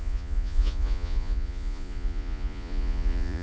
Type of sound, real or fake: fake